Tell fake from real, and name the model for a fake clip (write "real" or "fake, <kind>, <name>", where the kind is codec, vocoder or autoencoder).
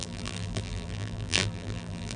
fake, vocoder, BigVGAN v2